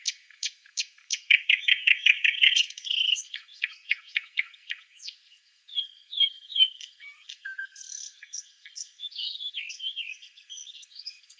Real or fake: fake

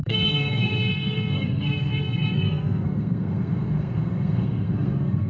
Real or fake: fake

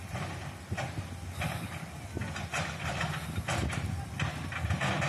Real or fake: real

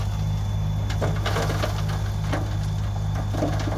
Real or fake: real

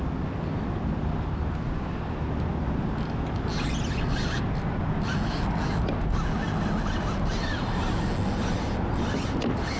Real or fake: real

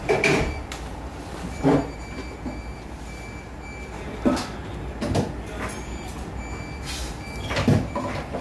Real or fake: real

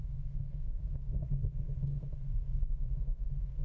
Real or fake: fake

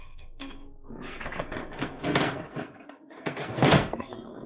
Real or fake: fake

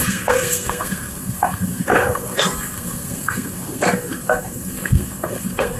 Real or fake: fake